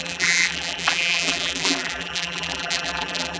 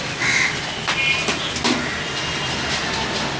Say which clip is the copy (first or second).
first